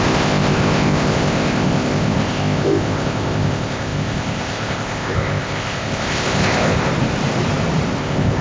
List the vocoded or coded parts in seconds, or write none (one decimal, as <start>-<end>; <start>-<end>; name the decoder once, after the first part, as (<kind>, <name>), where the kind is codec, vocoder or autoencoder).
0.0-6.9 (codec, ZipCodec); 8.0-8.4